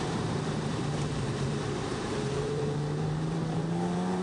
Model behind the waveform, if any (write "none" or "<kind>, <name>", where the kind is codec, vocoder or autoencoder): vocoder, BigVGAN v2